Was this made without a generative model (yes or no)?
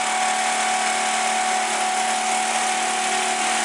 yes